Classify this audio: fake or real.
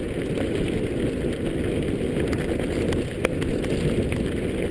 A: real